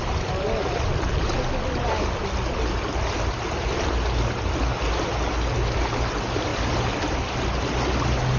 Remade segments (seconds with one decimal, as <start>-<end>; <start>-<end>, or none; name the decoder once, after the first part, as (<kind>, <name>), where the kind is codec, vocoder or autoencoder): 0.0-2.0 (vocoder, BigVGAN v2)